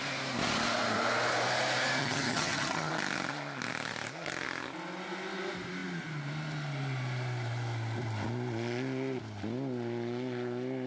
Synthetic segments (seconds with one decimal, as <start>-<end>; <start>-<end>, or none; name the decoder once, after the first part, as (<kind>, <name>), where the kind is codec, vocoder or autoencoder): 2.0-2.9 (vocoder, HiFi-GAN)